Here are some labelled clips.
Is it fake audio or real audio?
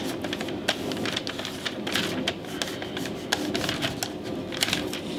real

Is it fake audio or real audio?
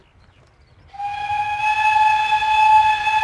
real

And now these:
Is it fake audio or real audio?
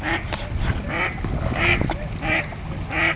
real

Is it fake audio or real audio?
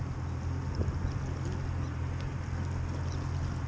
real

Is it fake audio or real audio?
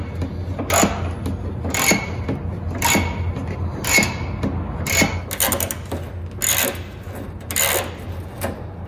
real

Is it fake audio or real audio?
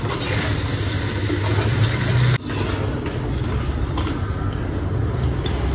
real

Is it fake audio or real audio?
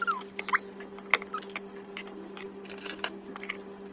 real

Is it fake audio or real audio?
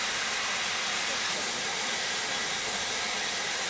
real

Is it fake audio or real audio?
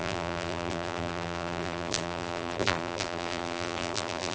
fake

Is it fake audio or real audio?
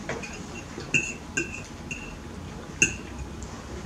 real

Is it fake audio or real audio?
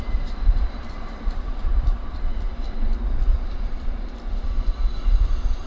fake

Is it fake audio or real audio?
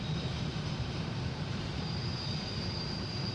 fake